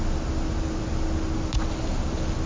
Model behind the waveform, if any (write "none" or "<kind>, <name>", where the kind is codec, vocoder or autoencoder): none